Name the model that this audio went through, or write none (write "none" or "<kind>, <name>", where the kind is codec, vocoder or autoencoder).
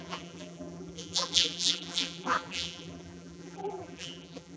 vocoder, BigVGAN v2